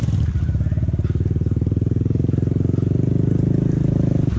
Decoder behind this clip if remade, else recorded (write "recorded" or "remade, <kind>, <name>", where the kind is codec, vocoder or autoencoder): recorded